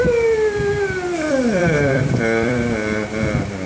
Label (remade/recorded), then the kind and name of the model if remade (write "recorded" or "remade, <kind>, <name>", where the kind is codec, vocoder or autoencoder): remade, vocoder, BigVGAN v2